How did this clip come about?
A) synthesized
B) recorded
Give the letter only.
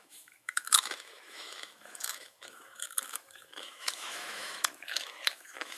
A